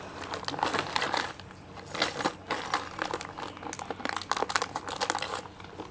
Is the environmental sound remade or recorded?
recorded